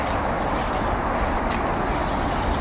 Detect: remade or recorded recorded